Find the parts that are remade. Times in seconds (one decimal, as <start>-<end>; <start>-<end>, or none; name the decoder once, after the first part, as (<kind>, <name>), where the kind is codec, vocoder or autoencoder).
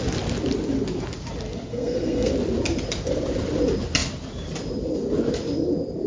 1.7-2.3 (codec, SNAC)